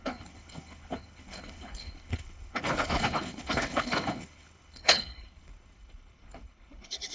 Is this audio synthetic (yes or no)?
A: yes